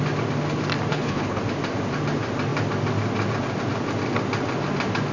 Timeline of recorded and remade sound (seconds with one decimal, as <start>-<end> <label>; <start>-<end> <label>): 0.0-0.9 recorded; 0.9-1.4 remade; 1.4-5.1 recorded